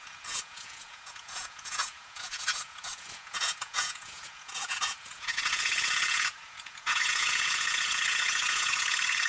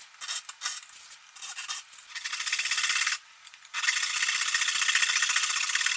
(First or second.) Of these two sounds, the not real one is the first